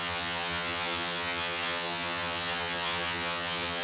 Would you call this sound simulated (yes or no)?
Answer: yes